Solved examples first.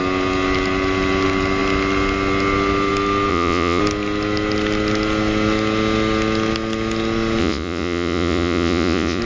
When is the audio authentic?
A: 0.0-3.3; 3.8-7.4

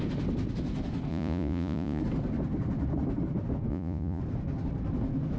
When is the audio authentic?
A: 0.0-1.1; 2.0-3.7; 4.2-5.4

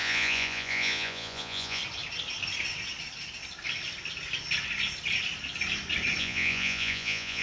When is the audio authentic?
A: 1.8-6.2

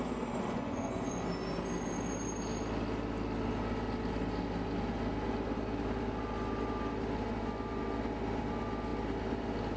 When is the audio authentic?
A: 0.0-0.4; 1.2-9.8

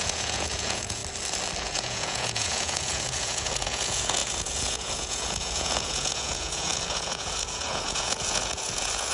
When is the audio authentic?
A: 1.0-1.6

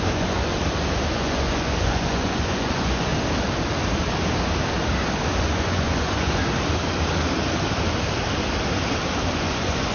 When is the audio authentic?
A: 0.5-1.1; 3.1-5.4; 6.4-9.3

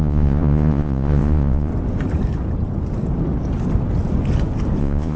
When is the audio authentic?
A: 1.7-4.8

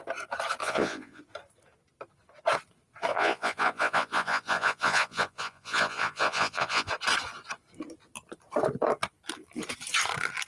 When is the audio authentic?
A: 0.0-0.6; 1.2-3.1; 6.9-10.5